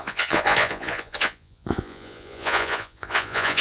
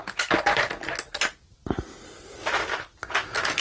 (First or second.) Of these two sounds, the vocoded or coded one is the first